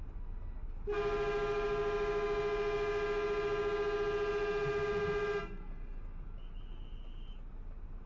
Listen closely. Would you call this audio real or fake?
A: real